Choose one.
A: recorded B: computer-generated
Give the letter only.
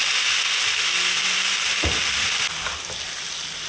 A